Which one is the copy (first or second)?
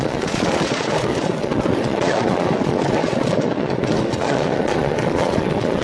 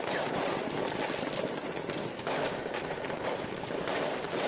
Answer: first